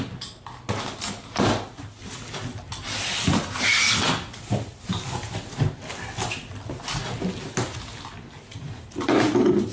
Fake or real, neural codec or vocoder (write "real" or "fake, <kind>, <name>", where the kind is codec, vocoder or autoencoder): real